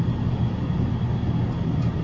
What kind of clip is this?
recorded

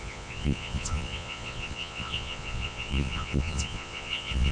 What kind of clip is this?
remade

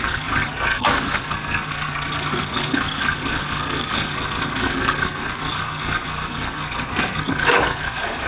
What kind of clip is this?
remade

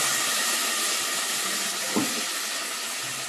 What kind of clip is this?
remade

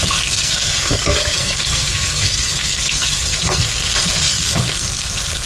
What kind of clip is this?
remade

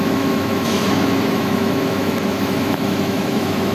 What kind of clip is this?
remade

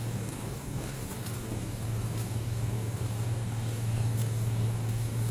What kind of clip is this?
remade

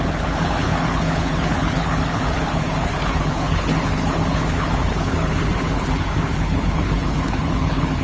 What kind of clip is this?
remade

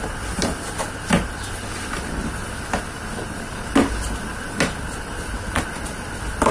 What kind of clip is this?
recorded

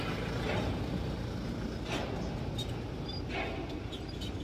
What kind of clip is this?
recorded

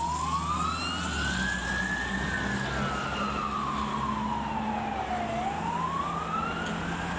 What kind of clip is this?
recorded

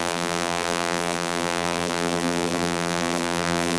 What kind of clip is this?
remade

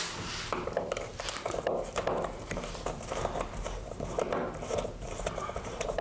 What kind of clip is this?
remade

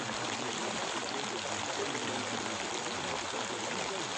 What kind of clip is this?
recorded